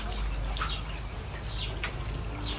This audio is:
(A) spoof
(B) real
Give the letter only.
B